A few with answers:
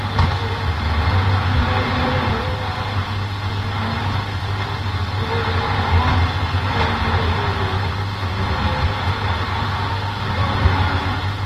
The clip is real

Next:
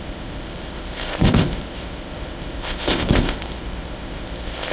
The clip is fake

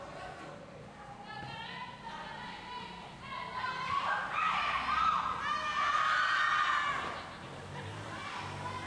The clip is real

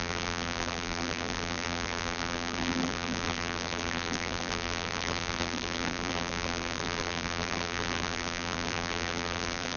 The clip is fake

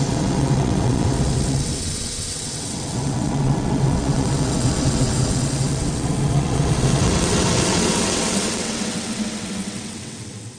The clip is fake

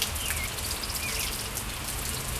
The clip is real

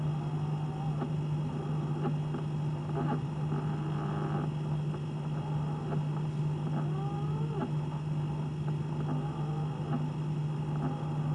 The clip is real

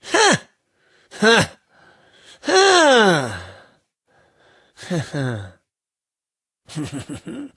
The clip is real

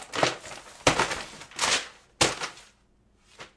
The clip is real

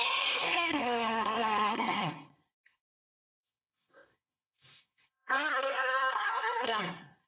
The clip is fake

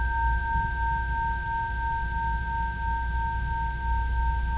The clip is real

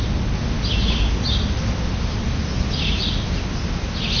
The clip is real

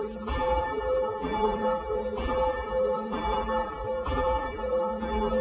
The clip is fake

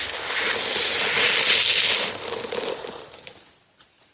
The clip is real